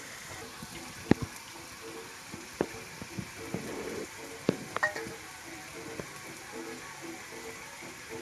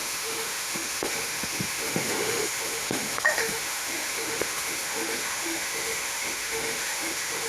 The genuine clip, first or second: first